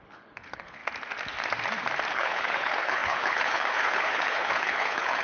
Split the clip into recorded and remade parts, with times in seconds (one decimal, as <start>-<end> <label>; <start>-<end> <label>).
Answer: 0.0-0.8 remade; 0.8-2.1 recorded; 2.1-5.2 remade